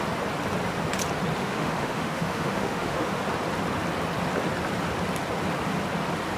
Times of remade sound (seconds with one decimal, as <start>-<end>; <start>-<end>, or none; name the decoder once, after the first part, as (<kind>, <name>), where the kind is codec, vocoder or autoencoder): 1.4-3.2 (autoencoder, DAC-VAE)